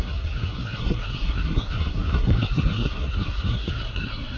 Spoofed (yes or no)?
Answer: yes